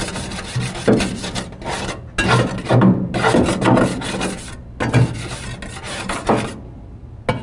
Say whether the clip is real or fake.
real